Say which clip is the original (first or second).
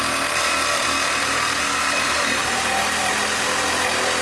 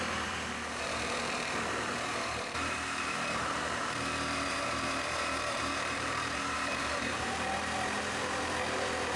first